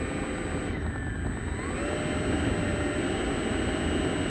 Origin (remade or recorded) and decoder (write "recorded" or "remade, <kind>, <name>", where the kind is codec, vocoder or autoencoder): recorded